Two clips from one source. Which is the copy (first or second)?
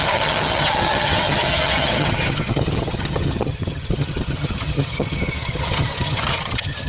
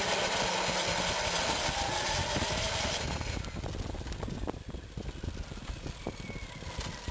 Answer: first